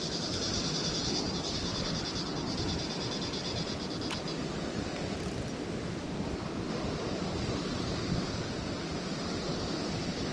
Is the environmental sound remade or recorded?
recorded